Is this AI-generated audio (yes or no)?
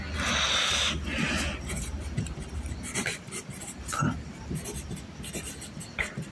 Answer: no